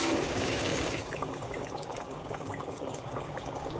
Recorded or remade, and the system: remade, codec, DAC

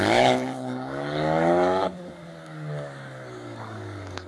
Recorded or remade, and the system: remade, codec, DAC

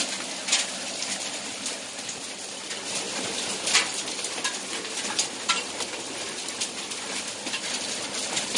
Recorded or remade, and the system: recorded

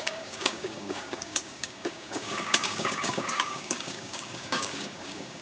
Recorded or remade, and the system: remade, codec, DAC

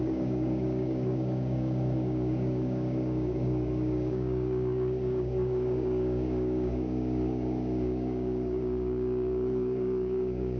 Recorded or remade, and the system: remade, codec, DAC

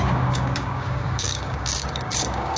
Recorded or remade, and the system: remade, codec, DAC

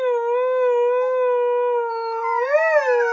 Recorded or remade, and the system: recorded